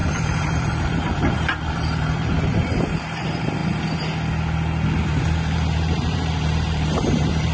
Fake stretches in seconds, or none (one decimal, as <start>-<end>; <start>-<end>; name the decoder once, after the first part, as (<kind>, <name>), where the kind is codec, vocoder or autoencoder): 0.0-3.6 (vocoder, BigVGAN v2); 5.2-7.5